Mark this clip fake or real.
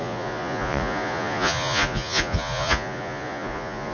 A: fake